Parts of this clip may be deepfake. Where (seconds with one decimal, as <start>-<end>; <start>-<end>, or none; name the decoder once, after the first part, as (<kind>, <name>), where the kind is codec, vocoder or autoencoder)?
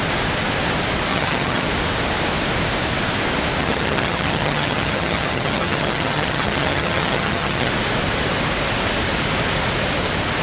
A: 1.1-1.7 (vocoder, HiFi-GAN); 3.6-7.7